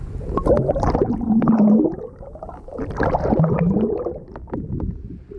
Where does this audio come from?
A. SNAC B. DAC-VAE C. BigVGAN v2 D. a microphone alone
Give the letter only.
D